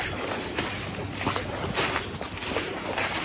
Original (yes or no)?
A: yes